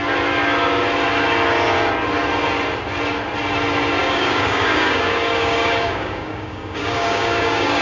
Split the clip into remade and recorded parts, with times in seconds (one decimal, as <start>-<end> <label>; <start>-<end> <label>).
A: 0.0-4.0 recorded; 4.0-7.8 remade